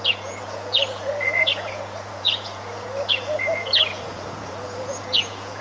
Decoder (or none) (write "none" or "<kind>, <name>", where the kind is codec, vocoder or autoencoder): vocoder, Vocos